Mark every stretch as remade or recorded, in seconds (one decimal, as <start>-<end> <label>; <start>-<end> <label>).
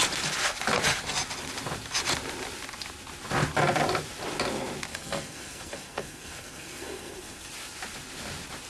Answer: 0.0-4.9 recorded; 4.9-7.5 remade; 7.5-8.7 recorded